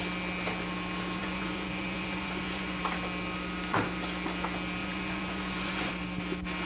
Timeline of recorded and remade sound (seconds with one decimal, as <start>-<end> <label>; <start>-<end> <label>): 0.0-1.2 recorded; 1.2-2.8 remade; 2.8-4.8 recorded; 4.8-5.9 remade; 5.9-6.6 recorded